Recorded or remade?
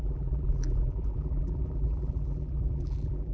remade